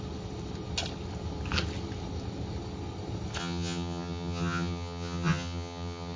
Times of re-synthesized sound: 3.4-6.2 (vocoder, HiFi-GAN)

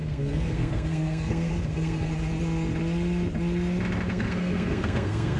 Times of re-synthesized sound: 0.0-2.1 (codec, SNAC); 4.1-5.4

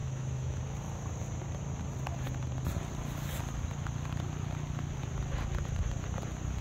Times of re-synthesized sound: 0.0-0.6 (autoencoder, DAC-VAE)

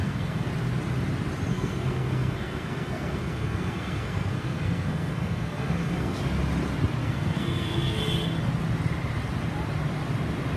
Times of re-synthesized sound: 0.0-0.5 (codec, SNAC); 1.5-6.2; 7.0-8.0